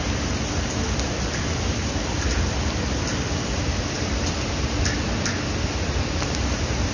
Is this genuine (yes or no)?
yes